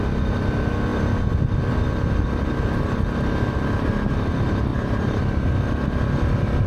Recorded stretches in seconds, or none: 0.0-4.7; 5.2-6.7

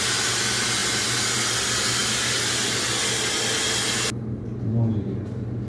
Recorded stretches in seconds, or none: 0.0-5.7